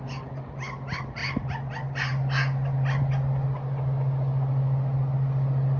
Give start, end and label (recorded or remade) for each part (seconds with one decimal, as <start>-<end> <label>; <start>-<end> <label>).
0.0-5.8 recorded